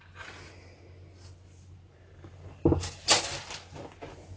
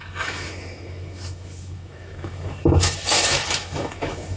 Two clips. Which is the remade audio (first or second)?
second